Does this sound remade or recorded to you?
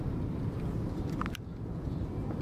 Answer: remade